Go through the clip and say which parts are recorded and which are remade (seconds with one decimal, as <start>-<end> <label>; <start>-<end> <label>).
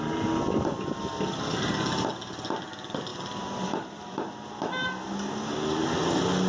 0.0-6.5 recorded